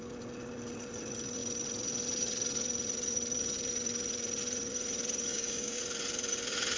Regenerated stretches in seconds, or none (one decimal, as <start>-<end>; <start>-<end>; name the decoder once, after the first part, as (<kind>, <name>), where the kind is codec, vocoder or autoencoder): 5.3-5.8 (codec, DAC)